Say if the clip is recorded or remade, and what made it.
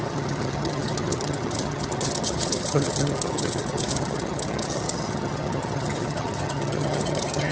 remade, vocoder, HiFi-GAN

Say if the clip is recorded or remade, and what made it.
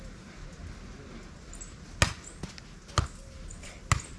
recorded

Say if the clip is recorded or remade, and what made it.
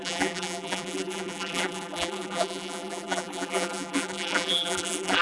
remade, vocoder, BigVGAN v2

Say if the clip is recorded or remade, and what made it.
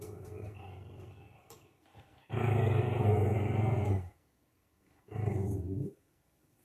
remade, codec, SNAC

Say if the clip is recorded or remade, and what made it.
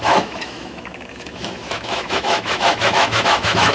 remade, autoencoder, DAC-VAE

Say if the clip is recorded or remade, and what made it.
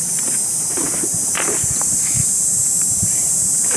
remade, vocoder, BigVGAN v2